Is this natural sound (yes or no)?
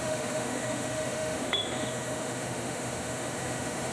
no